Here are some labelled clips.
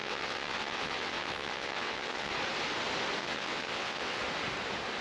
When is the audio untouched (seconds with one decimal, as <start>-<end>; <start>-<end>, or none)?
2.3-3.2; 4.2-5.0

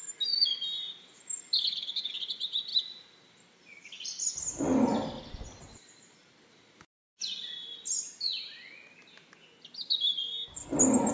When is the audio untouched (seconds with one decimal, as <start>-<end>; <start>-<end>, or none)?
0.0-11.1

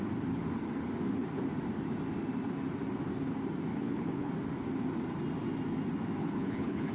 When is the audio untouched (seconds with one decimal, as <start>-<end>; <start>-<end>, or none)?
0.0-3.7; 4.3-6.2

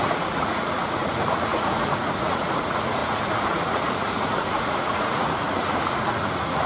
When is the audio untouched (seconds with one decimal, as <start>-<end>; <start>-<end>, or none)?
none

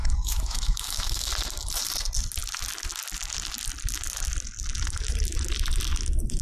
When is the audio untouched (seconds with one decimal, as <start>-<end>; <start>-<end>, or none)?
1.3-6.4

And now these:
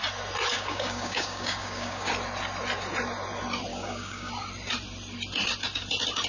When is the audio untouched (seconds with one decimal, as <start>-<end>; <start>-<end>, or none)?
0.0-0.5; 2.1-3.7; 4.3-6.3